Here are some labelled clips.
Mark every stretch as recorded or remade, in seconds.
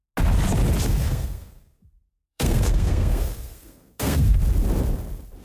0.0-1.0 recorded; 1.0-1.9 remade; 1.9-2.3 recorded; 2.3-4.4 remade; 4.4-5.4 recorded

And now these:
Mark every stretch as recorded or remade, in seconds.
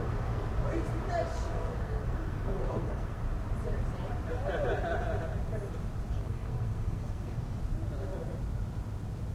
0.0-0.5 remade; 0.5-1.3 recorded; 1.3-3.2 remade; 3.2-6.1 recorded; 6.1-7.6 remade; 7.6-9.3 recorded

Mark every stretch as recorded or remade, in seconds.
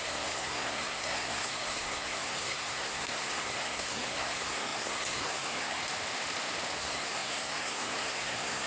0.0-5.8 remade; 5.8-6.8 recorded; 6.8-8.7 remade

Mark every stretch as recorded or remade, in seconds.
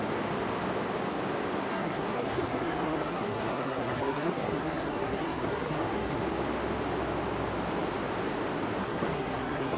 0.0-1.7 recorded; 1.7-6.2 remade; 6.2-8.8 recorded; 8.8-9.8 remade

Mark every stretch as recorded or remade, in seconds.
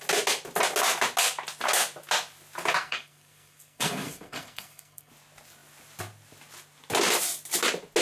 0.0-2.8 recorded; 2.8-5.1 remade; 5.1-8.0 recorded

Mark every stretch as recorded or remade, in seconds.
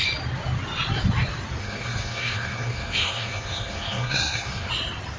0.0-1.6 recorded; 1.6-4.7 remade; 4.7-5.2 recorded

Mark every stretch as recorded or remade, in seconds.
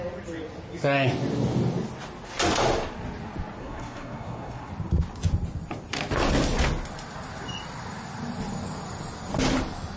0.0-3.6 recorded; 3.6-4.7 remade; 4.7-10.0 recorded